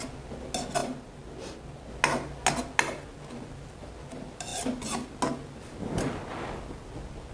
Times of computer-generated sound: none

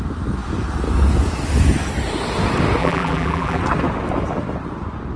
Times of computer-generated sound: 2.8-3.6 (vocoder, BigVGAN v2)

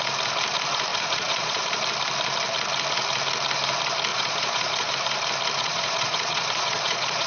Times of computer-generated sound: 0.9-1.8 (vocoder, Vocos); 4.1-4.9; 5.6-7.3

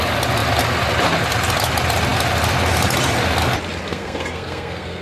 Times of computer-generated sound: 3.9-5.0 (codec, SNAC)

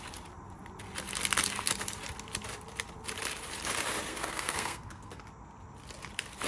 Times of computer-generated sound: 4.1-5.2 (codec, SNAC)

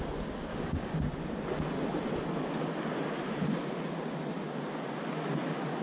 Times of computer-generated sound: 0.5-1.0 (codec, DAC)